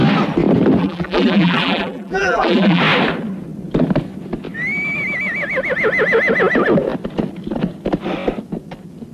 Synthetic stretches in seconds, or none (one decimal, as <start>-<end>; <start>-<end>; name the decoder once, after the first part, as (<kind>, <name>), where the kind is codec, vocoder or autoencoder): 0.8-2.8 (vocoder, BigVGAN v2)